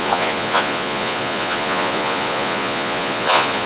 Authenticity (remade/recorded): remade